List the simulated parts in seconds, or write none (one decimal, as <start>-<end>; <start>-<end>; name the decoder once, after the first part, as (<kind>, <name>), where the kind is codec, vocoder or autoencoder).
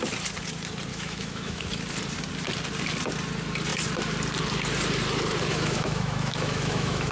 0.9-1.6 (autoencoder, DAC-VAE); 5.5-7.1